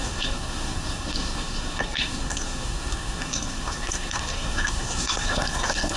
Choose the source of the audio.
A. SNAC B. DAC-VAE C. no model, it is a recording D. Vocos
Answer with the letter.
A